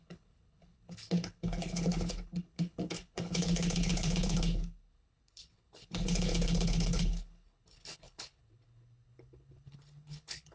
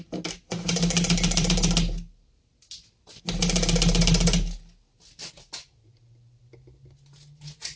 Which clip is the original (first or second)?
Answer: second